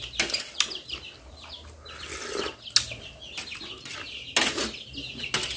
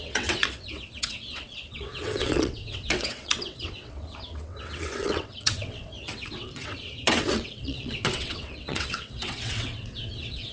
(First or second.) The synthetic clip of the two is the second